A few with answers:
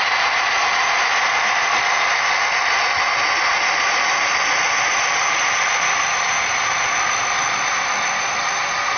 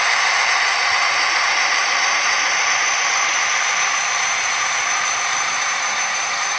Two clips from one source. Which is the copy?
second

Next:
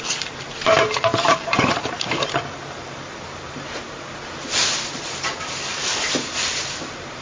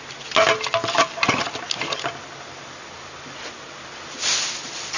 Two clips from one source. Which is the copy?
first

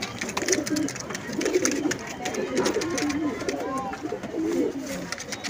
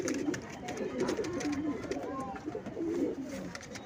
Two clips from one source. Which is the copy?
second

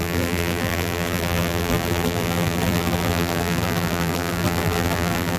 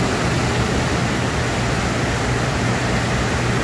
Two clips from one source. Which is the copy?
first